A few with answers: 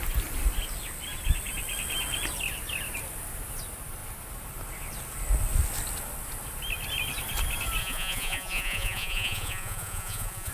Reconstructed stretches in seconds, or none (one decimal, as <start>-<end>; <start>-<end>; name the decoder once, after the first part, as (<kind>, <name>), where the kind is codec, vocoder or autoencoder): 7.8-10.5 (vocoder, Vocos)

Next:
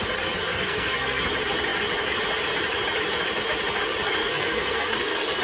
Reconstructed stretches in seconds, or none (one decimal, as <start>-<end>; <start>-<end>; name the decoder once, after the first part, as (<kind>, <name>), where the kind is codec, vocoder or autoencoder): 0.5-1.2 (codec, SNAC); 4.2-5.4

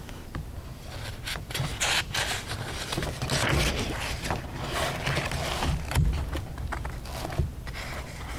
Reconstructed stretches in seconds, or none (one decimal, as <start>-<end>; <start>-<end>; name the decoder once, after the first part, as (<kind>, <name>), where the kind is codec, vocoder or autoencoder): none

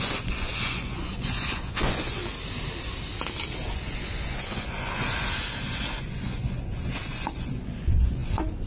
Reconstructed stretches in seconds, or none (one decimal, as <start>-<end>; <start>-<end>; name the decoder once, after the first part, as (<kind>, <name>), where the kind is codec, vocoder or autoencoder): 0.0-2.2 (vocoder, Vocos); 3.7-8.7

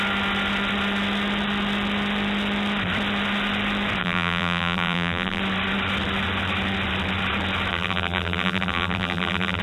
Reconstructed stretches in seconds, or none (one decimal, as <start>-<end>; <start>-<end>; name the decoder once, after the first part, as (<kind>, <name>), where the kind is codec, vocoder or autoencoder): 4.0-5.4 (vocoder, BigVGAN v2); 7.7-9.6

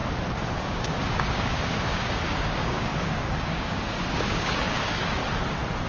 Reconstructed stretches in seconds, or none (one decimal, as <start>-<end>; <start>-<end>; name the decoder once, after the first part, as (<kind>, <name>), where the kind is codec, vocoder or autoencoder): 0.6-5.2 (codec, DAC)

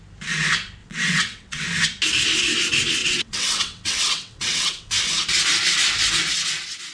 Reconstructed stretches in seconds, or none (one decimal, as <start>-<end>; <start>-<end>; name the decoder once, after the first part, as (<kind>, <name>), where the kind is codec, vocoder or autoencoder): 0.8-1.6 (vocoder, WaveNeXt); 3.0-4.9

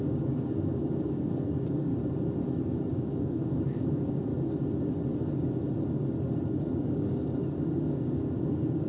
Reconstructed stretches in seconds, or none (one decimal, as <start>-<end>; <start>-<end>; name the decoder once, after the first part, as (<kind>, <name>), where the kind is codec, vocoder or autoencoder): 0.0-1.9 (codec, DAC); 2.9-4.3; 6.5-8.9